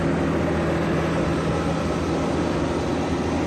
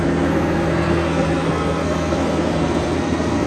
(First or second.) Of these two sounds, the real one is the first